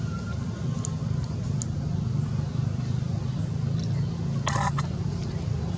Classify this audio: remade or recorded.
recorded